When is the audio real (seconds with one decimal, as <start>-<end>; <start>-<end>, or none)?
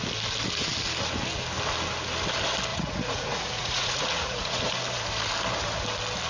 0.0-2.7; 4.6-6.3